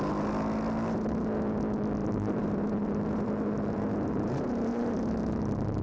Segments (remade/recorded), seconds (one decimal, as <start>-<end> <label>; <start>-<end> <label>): 0.0-2.0 recorded; 2.0-5.1 remade; 5.1-5.8 recorded